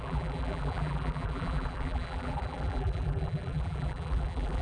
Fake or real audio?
fake